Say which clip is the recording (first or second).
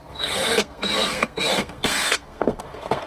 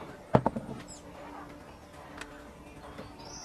second